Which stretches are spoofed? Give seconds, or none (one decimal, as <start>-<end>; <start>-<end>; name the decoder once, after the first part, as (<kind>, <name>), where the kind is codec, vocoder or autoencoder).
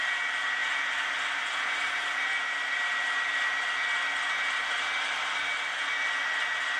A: 0.6-2.0 (vocoder, BigVGAN v2)